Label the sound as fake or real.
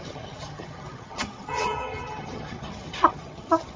fake